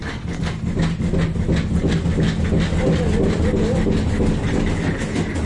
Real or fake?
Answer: real